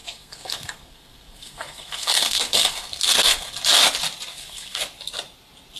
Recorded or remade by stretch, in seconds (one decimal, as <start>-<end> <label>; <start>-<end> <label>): 0.0-3.5 remade; 3.5-4.3 recorded; 4.3-4.8 remade; 4.8-5.8 recorded